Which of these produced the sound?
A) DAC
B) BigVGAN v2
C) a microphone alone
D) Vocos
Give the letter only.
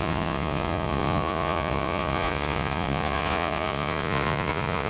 D